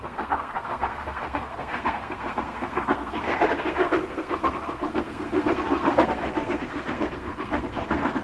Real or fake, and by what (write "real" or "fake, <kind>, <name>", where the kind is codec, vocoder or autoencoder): fake, codec, SNAC